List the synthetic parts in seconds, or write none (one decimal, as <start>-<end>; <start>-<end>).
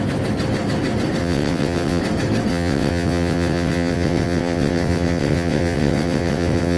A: 1.2-2.0; 2.5-6.8